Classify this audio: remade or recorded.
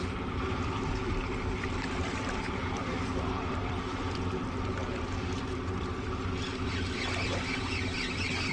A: remade